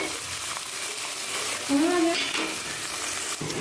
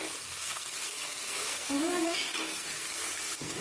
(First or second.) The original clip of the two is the first